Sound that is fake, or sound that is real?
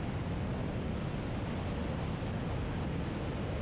real